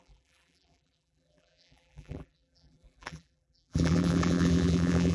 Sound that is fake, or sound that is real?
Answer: fake